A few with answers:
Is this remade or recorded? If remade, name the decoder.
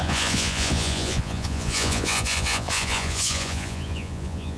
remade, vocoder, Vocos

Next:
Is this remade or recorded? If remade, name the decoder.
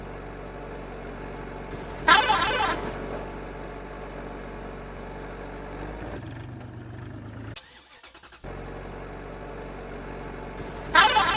recorded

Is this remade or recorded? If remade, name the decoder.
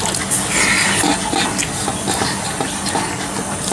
recorded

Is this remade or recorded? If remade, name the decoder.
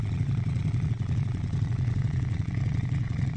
remade, vocoder, Vocos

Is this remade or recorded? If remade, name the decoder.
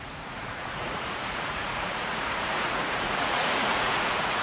remade, vocoder, Vocos